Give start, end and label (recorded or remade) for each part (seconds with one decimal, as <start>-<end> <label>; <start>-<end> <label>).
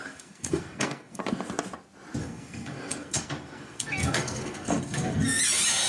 0.0-1.2 remade; 1.2-2.2 recorded; 2.2-5.4 remade; 5.4-5.9 recorded